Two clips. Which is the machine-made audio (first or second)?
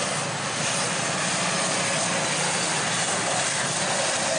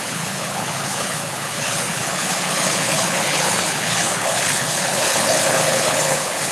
second